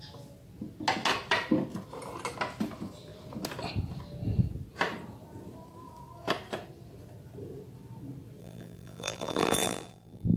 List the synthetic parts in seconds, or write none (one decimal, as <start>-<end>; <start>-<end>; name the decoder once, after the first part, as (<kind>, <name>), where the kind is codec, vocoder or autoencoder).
8.4-10.4 (vocoder, BigVGAN v2)